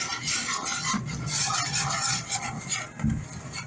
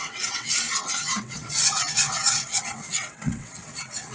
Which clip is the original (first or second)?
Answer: first